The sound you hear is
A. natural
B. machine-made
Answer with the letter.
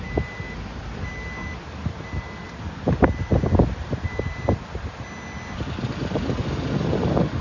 A